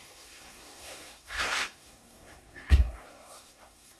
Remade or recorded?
remade